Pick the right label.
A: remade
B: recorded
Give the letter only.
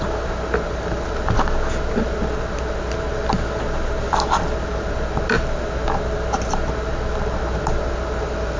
A